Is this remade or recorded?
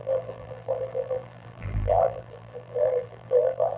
remade